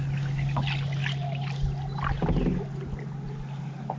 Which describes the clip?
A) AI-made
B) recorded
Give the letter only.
B